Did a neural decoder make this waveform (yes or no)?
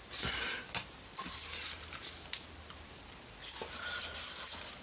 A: no